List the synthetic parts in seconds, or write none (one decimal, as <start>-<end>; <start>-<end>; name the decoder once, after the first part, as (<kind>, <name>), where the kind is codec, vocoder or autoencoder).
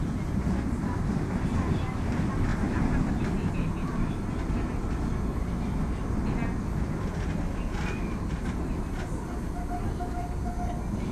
2.5-3.5 (vocoder, BigVGAN v2)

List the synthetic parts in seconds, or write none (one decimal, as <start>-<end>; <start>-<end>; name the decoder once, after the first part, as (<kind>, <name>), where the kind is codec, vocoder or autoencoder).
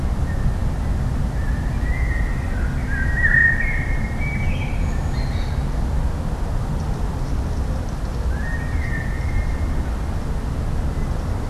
3.4-4.8 (vocoder, BigVGAN v2)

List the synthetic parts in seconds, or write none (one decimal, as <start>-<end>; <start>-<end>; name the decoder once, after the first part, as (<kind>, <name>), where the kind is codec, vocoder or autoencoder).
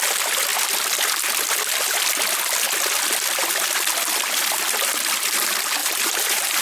5.8-6.6 (vocoder, BigVGAN v2)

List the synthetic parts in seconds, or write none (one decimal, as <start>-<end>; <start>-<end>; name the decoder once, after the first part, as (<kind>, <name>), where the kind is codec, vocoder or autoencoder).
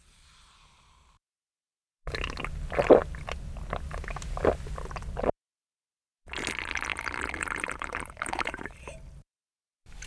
6.9-8.9 (vocoder, BigVGAN v2)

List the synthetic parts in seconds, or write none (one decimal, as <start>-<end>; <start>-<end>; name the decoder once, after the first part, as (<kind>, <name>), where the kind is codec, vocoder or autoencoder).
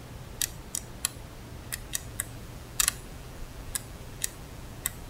1.9-5.1 (vocoder, BigVGAN v2)